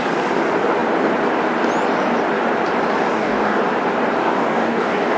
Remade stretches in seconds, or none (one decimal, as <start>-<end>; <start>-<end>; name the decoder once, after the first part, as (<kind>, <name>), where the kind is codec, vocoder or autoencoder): 3.1-3.6 (codec, DAC); 4.2-5.2